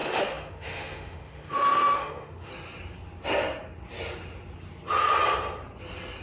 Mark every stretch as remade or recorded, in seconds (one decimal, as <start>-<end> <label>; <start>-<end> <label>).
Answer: 0.0-2.5 remade; 2.5-6.2 recorded